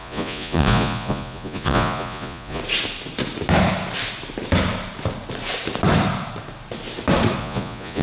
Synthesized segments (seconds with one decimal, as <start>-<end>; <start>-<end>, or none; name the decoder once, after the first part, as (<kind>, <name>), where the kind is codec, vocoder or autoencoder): 0.0-2.6 (vocoder, Vocos); 7.4-8.0